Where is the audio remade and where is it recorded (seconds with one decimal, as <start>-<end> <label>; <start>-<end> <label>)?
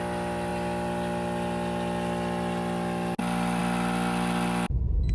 0.0-5.1 recorded